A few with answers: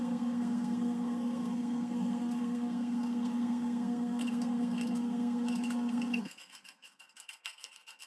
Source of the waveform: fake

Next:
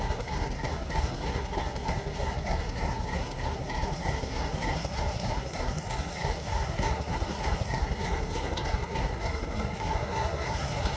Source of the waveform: fake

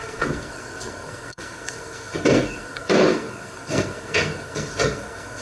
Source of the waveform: fake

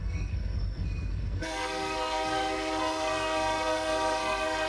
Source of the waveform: fake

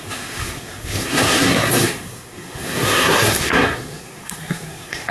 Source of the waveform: fake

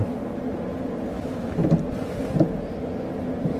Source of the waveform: real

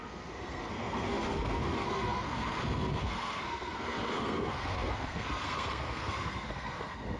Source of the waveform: fake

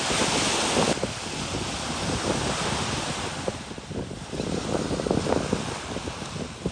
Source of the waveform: real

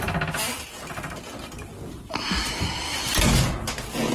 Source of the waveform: real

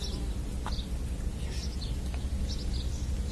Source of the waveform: real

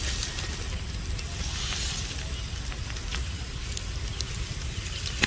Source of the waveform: real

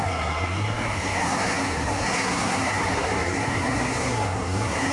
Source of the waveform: fake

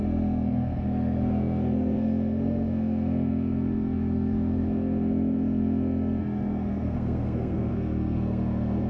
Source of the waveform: fake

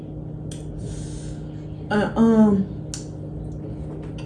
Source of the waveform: real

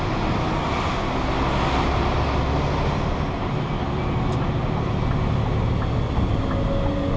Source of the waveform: real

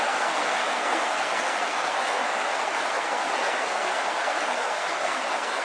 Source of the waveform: fake